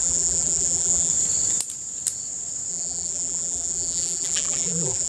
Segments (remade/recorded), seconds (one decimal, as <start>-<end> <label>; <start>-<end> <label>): 0.0-1.1 remade; 1.1-2.7 recorded; 2.7-5.1 remade